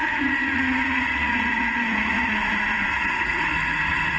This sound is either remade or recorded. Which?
remade